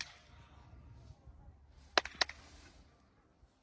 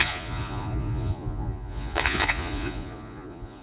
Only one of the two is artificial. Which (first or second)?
second